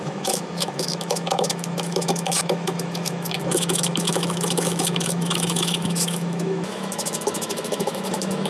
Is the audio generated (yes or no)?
yes